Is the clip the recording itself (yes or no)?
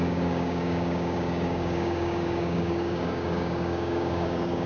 no